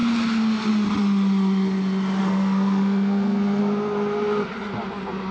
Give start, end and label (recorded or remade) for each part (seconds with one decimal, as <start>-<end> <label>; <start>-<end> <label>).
0.0-2.2 recorded; 2.2-3.6 remade; 3.6-5.3 recorded